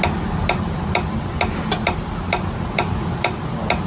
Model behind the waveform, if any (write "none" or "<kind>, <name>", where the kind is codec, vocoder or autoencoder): none